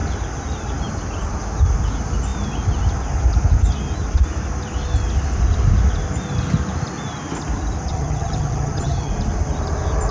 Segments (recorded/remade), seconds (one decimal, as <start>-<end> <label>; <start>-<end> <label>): 0.0-7.9 recorded; 7.9-9.1 remade; 9.1-10.1 recorded